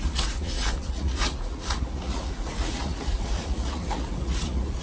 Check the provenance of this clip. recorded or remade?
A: remade